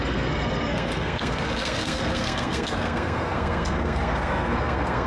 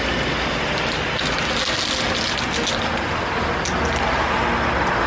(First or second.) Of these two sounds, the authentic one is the second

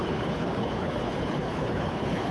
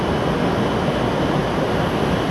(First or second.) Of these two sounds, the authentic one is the second